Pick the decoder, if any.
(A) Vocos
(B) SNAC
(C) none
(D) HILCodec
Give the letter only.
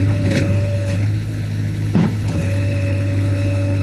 D